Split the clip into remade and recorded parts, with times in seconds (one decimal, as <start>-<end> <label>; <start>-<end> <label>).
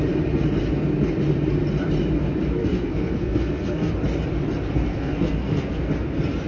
0.0-2.6 recorded; 2.6-3.9 remade; 3.9-4.9 recorded; 4.9-5.9 remade; 5.9-6.5 recorded